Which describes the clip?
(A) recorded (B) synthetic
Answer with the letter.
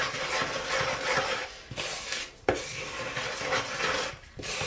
B